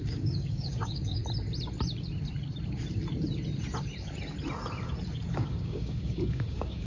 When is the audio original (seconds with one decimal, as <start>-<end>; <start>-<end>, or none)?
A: 1.2-5.3